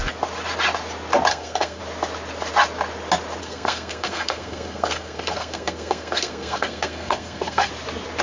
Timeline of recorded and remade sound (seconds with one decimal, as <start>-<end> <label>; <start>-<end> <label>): 0.0-1.3 recorded; 1.3-1.8 remade; 1.8-3.4 recorded; 3.4-7.7 remade; 7.7-8.2 recorded